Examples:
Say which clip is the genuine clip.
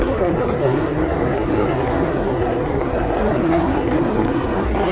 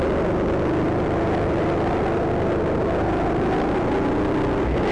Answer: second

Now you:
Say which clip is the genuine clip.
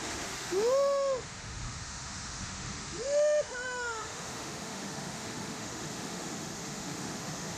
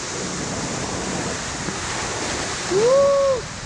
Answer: second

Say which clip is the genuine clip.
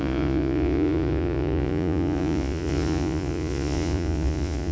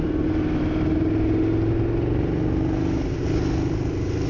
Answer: second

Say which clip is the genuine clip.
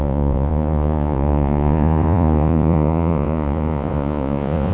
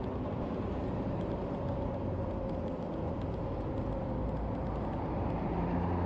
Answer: second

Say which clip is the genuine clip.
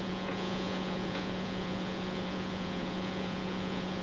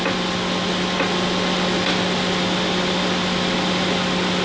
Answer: second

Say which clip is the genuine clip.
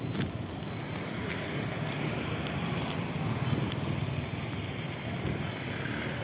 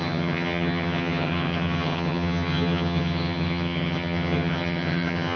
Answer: first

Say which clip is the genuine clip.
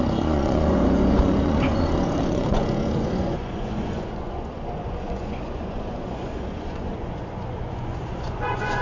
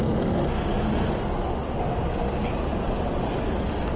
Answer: second